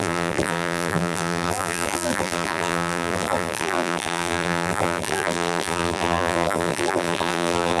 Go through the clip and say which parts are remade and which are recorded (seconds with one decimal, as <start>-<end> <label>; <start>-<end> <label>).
0.0-7.8 remade